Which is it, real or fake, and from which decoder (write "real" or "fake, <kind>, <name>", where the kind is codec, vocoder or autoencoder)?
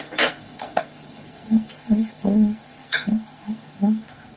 fake, codec, SNAC